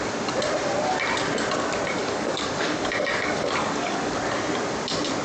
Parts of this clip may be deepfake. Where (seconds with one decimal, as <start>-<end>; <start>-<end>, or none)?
2.0-4.1